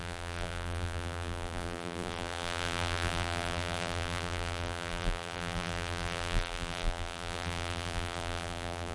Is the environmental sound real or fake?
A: fake